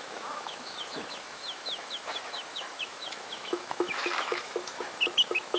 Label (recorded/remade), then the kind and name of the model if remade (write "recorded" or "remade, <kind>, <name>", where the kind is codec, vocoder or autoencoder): remade, autoencoder, DAC-VAE